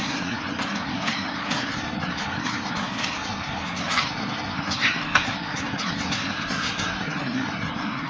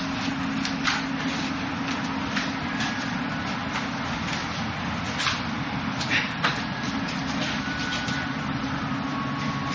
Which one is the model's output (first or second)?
first